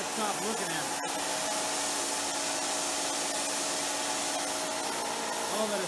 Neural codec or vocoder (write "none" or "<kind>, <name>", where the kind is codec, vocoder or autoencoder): none